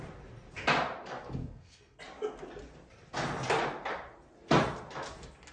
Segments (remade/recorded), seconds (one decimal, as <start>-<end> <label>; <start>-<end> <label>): 0.0-1.4 recorded; 1.4-2.0 remade; 2.0-5.5 recorded